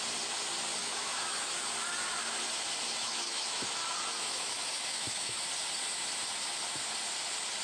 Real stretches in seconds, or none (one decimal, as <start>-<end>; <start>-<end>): 0.0-0.8; 1.5-3.0; 3.6-4.2; 5.4-7.6